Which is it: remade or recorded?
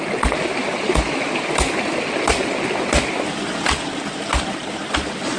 recorded